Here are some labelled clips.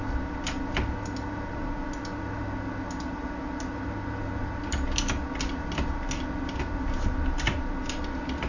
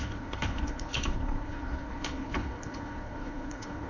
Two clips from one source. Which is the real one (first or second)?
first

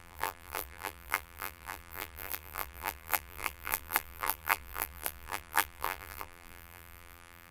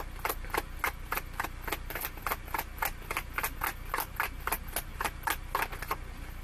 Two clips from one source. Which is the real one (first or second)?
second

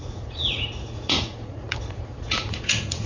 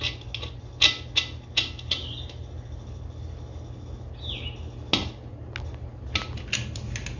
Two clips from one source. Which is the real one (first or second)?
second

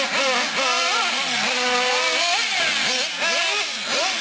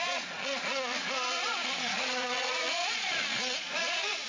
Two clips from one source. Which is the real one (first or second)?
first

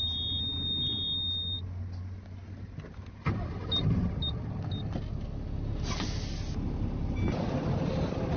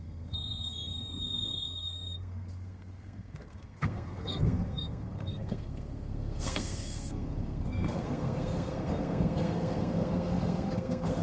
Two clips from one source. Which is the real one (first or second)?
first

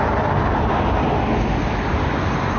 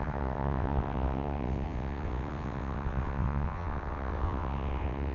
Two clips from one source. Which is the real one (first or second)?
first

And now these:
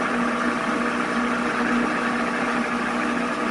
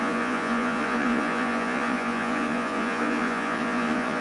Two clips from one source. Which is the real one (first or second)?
first